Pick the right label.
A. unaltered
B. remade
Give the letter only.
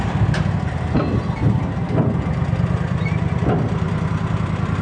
A